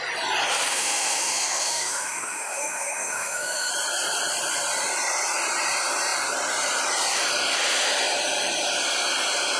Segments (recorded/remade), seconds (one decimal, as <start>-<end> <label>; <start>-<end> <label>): 0.0-0.7 recorded; 0.7-3.7 remade; 3.7-9.6 recorded